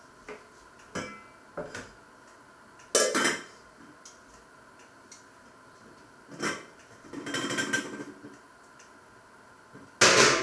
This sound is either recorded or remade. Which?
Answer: recorded